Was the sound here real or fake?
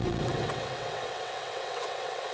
fake